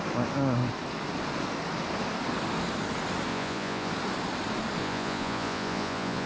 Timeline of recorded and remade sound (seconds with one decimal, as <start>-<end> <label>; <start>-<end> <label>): 0.0-3.3 recorded; 3.3-3.9 remade; 3.9-4.8 recorded; 4.8-6.3 remade